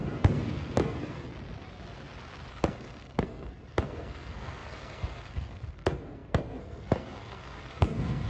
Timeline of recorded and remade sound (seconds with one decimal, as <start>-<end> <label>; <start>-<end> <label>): 0.0-1.3 remade; 1.3-2.5 recorded; 2.5-8.3 remade